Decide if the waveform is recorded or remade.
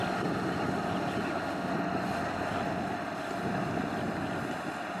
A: recorded